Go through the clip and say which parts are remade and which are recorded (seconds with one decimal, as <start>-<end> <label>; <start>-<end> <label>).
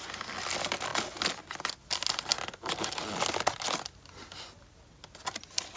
0.0-5.8 recorded